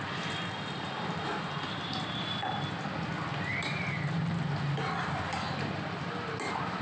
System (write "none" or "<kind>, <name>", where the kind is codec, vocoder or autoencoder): none